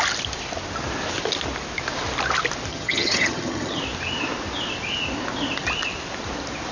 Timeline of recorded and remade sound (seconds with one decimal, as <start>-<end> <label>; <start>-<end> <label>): 0.0-2.7 recorded; 2.7-3.8 remade; 3.8-6.7 recorded